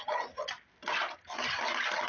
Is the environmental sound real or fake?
real